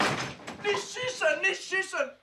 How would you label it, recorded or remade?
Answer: recorded